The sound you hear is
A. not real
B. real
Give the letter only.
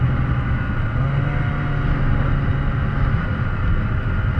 B